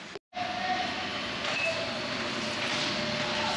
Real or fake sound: real